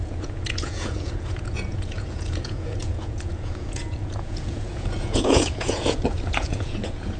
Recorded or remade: remade